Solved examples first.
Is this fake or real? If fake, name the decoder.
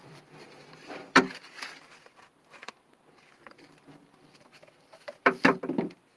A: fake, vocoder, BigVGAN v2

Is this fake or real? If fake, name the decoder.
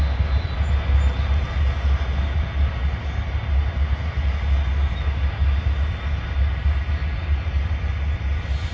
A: real